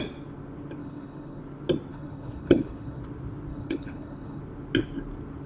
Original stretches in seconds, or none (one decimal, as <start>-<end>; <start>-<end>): 0.0-0.8; 1.4-1.9; 3.0-3.5; 4.4-5.5

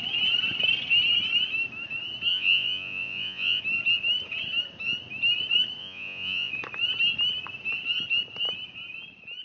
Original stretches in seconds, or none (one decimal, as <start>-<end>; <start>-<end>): 0.0-2.3; 3.6-5.8; 6.5-9.4

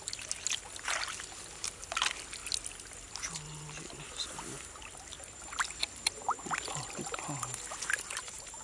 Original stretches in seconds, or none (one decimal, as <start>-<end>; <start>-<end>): 0.0-8.6

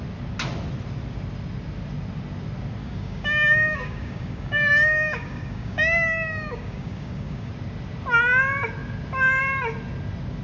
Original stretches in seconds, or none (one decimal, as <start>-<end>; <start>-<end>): 0.0-2.8; 7.5-10.4

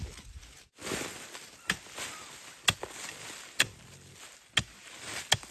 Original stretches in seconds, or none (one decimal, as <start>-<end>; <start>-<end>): 0.0-5.5

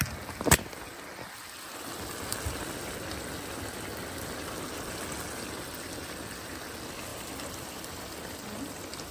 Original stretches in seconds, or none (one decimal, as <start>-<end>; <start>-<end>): 0.0-7.1

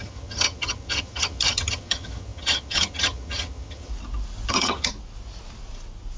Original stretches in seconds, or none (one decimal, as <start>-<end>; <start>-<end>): 3.9-4.5; 4.9-6.2